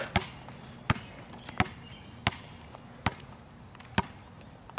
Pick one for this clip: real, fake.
real